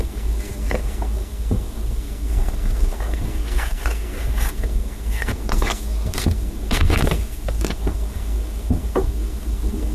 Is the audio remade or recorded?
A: remade